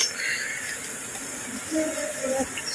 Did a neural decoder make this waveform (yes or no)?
no